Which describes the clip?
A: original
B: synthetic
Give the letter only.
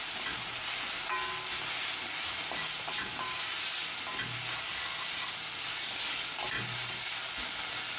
A